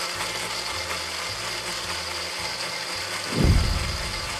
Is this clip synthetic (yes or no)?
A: no